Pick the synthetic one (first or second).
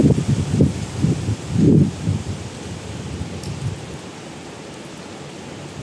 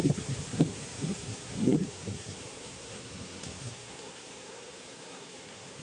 second